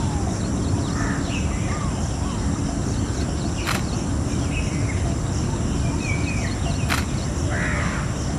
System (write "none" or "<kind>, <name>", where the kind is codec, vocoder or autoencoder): none